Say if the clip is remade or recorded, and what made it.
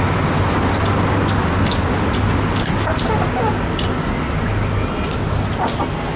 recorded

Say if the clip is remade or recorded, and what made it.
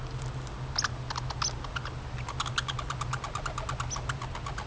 recorded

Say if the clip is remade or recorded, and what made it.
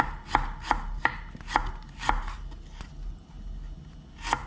recorded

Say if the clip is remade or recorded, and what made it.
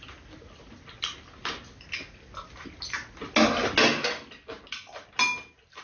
recorded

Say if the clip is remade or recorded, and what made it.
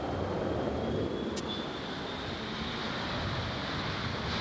recorded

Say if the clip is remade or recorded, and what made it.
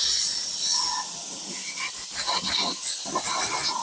recorded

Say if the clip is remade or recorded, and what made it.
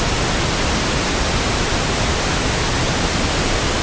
recorded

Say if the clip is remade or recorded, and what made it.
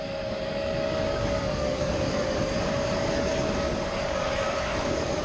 remade, codec, DAC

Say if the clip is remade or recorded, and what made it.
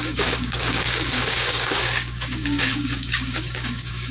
remade, codec, DAC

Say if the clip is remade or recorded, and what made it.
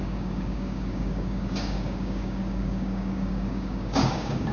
remade, codec, DAC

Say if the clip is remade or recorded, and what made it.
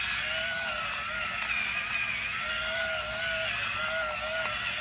recorded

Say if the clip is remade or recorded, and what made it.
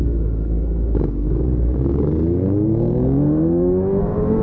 remade, codec, DAC